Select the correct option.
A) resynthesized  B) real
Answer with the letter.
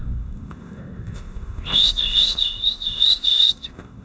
A